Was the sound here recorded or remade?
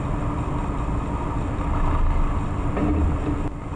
recorded